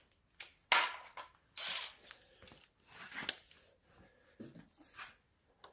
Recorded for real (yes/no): yes